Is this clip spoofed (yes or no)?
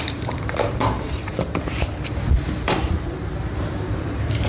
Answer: yes